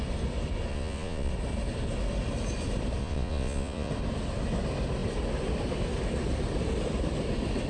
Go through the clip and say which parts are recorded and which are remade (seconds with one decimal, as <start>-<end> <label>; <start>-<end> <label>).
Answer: 0.0-0.7 recorded; 0.7-1.3 remade; 1.3-3.0 recorded; 3.0-3.9 remade; 3.9-7.7 recorded